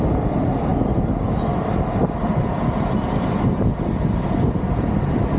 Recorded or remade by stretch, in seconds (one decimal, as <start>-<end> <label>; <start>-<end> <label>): 0.0-5.4 recorded